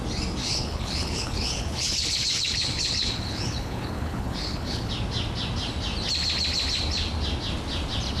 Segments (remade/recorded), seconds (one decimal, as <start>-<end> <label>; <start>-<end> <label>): 0.0-0.4 recorded; 0.4-4.9 remade; 4.9-8.2 recorded